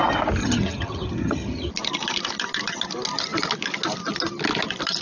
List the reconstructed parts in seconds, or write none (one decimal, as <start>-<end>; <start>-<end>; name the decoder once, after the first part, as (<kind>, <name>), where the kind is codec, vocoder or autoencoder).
0.4-1.7 (vocoder, HiFi-GAN)